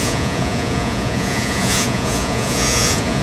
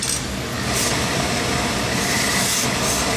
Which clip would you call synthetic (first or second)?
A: first